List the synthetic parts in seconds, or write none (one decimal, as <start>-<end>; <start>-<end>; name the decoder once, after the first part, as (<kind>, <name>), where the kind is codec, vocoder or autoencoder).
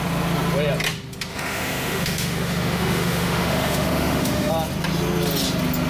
1.3-4.5 (autoencoder, DAC-VAE)